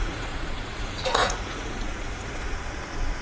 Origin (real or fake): fake